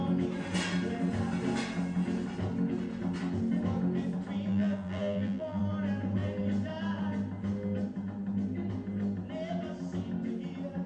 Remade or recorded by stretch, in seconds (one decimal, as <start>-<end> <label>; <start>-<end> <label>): 0.0-4.5 recorded; 4.5-5.6 remade; 5.6-10.9 recorded